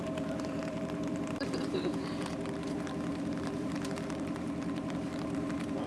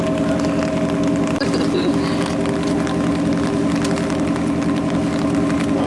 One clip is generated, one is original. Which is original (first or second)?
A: second